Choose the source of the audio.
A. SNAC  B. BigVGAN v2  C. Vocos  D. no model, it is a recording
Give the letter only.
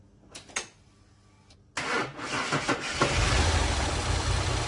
D